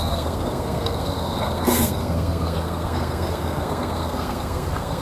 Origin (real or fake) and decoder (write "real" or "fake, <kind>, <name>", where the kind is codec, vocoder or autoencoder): fake, codec, SNAC